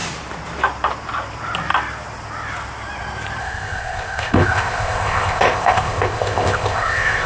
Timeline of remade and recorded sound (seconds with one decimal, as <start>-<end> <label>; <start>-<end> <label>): 0.0-3.4 recorded; 3.4-7.3 remade